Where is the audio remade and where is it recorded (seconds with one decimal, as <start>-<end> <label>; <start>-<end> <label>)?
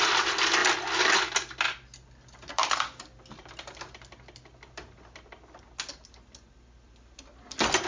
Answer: 0.0-7.9 recorded